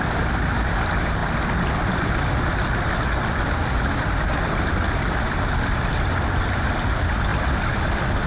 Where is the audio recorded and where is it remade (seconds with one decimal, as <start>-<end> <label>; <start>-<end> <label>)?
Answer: 0.0-8.3 recorded